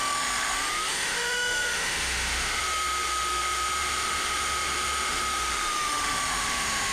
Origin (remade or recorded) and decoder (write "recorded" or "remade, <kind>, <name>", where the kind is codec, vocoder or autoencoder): remade, autoencoder, DAC-VAE